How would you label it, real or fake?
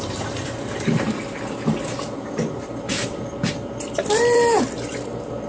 fake